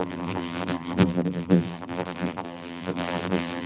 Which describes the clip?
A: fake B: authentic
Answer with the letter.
A